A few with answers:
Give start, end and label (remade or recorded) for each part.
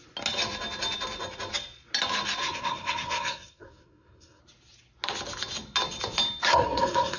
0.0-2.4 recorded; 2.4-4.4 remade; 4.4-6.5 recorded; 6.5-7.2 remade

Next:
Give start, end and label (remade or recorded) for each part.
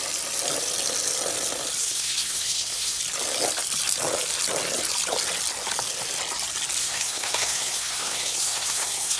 0.0-1.8 recorded; 1.8-3.0 remade; 3.0-6.8 recorded; 6.8-9.2 remade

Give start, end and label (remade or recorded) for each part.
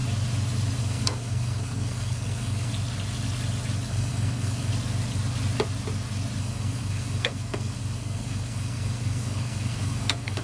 0.0-0.8 recorded; 0.8-2.7 remade; 2.7-3.9 recorded; 3.9-4.7 remade; 4.7-6.4 recorded; 6.4-10.4 remade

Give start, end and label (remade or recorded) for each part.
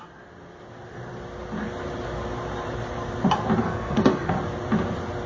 0.0-3.6 recorded; 3.6-4.3 remade; 4.3-5.3 recorded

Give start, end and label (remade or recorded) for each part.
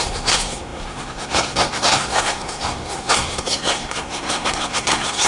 0.0-5.3 remade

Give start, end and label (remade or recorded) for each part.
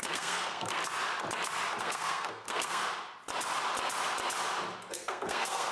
0.0-0.8 remade; 0.8-1.8 recorded; 1.8-2.8 remade; 2.8-4.9 recorded; 4.9-5.7 remade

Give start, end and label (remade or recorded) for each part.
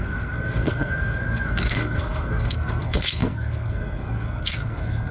0.0-5.1 remade